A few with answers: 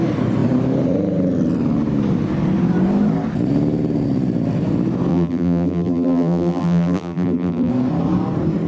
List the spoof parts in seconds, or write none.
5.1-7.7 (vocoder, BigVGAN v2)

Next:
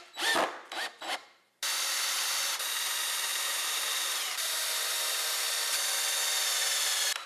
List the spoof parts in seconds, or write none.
3.3-4.5 (vocoder, BigVGAN v2)

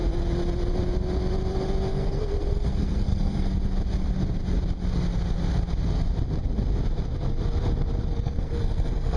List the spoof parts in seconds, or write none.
1.9-3.5 (codec, SNAC); 8.1-9.2